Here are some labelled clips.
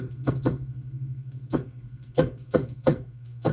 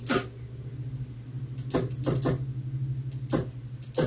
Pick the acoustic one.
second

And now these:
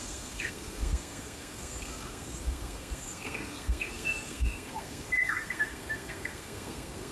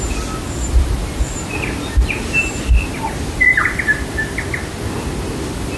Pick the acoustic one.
second